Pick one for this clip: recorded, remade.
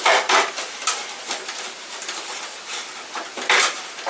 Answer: recorded